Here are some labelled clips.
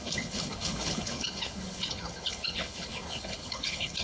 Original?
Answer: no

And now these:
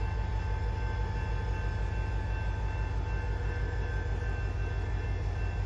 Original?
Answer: yes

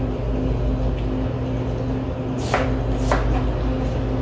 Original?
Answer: yes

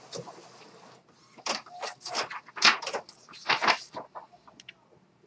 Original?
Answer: yes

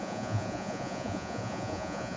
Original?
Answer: no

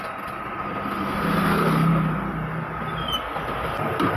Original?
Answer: yes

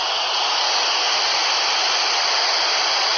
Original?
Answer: yes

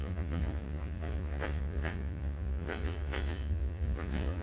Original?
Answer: no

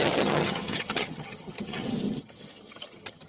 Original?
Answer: no